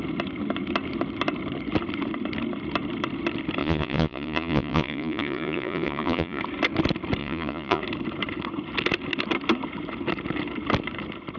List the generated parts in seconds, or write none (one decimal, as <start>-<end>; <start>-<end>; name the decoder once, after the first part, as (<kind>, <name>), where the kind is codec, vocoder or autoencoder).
3.6-6.4 (vocoder, Vocos); 7.2-7.8